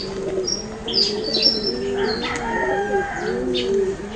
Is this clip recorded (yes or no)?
yes